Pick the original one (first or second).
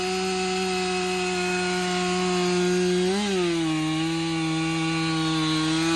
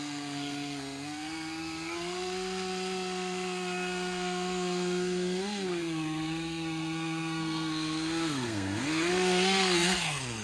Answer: first